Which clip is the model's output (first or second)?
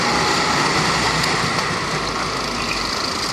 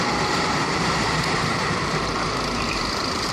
second